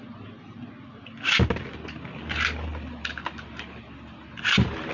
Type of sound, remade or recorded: remade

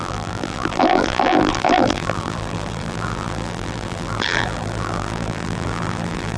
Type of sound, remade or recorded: remade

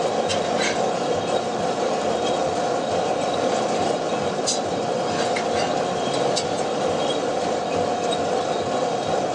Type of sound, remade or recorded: remade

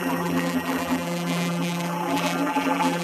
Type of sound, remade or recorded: remade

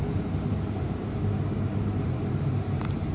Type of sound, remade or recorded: remade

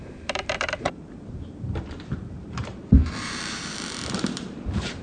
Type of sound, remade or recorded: remade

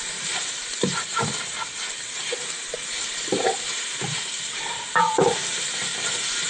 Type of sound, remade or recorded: remade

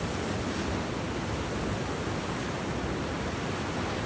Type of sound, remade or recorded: recorded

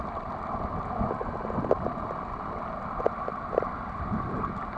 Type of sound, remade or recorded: recorded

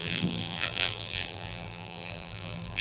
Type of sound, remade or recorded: remade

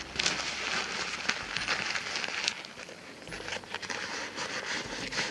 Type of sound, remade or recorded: recorded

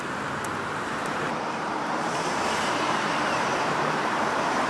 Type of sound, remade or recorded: remade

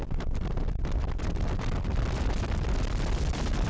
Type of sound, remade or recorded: remade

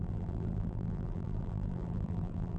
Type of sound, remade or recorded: remade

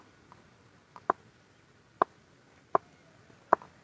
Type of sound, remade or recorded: recorded